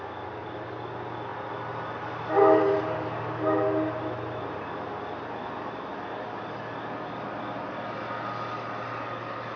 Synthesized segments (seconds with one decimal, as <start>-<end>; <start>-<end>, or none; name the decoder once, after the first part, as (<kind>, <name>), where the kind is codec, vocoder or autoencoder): none